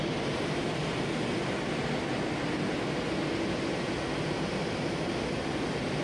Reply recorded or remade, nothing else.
recorded